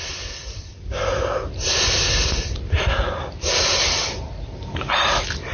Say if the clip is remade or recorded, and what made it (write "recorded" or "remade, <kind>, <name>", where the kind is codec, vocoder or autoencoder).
recorded